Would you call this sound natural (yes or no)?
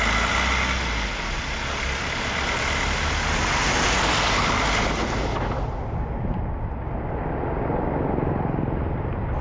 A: yes